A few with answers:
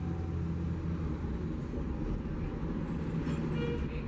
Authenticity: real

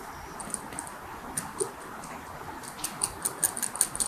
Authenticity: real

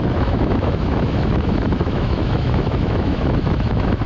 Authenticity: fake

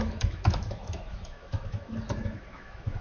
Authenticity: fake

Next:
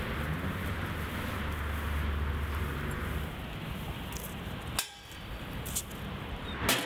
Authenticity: real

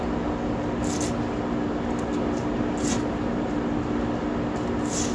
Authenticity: real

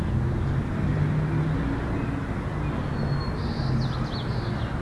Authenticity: real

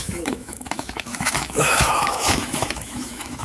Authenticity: fake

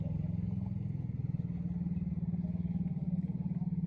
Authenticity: real